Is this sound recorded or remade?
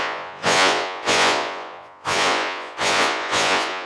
remade